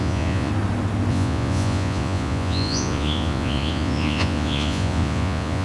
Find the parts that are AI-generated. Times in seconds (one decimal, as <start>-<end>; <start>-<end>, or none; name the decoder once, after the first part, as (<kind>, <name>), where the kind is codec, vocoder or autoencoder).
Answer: 0.0-0.5 (vocoder, Vocos); 1.1-5.6